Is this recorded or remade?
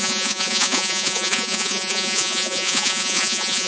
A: remade